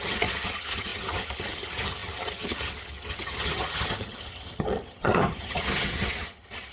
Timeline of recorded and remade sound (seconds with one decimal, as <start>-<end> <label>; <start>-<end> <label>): 0.0-6.7 remade